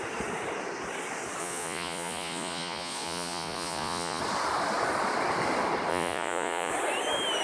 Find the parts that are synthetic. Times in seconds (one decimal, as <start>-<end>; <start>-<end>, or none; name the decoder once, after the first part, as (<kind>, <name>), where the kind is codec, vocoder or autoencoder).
1.4-4.2 (vocoder, Vocos); 5.9-6.7